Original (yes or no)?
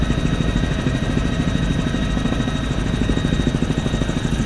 yes